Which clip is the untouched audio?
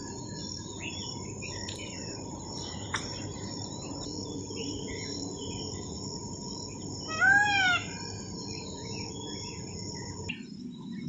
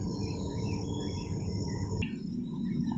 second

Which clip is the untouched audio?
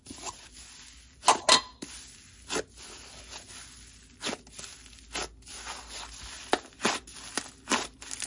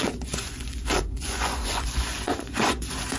first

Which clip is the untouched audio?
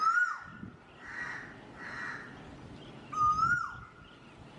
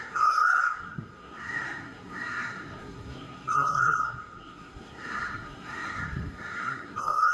first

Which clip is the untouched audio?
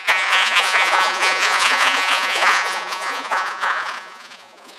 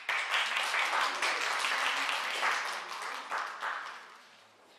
second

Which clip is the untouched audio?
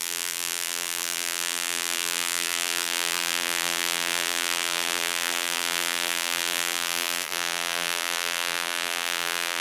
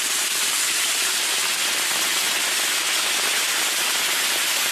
second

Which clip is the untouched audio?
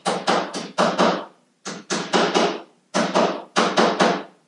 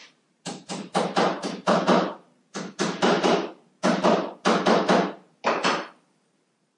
first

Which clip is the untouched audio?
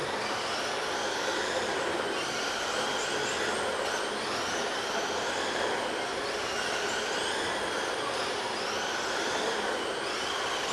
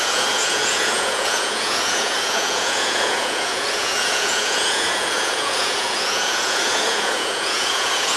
first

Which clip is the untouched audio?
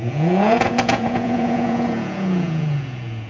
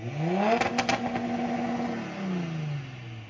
second